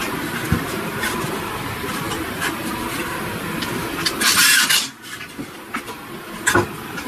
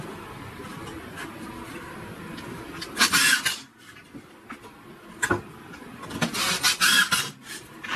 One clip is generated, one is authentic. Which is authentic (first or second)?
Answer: second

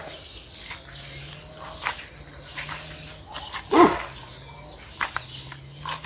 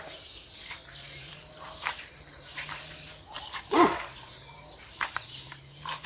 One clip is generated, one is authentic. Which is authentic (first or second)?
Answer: first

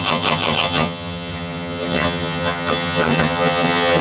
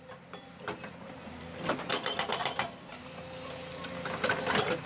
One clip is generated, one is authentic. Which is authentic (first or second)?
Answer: second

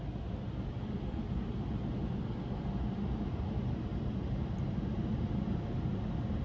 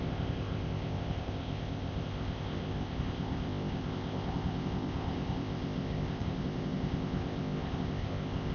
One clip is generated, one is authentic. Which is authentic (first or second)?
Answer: first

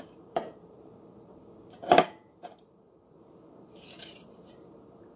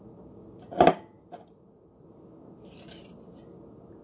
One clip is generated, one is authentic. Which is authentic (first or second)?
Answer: second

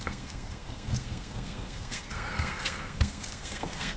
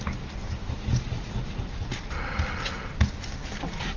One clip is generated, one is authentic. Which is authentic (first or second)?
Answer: second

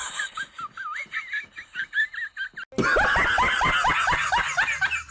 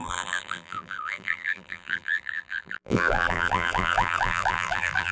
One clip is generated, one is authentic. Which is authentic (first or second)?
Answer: first